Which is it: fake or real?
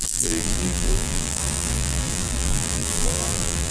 fake